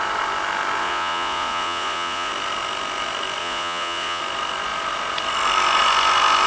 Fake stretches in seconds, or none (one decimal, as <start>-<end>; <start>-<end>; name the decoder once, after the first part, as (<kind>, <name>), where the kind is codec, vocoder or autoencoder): 0.8-2.3 (vocoder, Vocos); 3.4-4.2

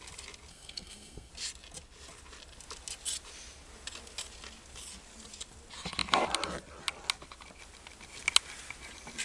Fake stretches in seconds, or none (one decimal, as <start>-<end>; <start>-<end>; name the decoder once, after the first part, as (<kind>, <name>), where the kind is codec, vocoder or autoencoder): 0.5-1.3 (codec, SNAC)